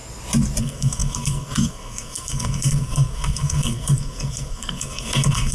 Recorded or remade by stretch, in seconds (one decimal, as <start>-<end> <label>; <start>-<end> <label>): 0.0-0.6 recorded; 0.6-5.5 remade